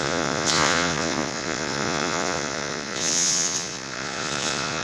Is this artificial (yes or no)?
yes